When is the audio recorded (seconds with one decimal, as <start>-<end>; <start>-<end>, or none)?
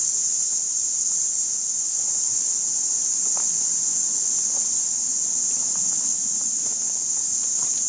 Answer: 0.0-7.9